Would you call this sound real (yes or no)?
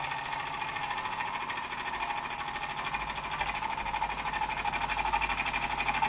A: yes